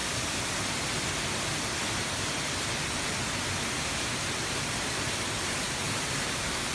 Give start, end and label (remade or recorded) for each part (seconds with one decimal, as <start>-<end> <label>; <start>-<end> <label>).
0.0-4.0 recorded; 4.0-6.7 remade